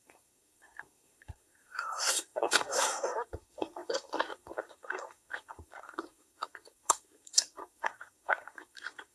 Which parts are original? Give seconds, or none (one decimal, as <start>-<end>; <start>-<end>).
none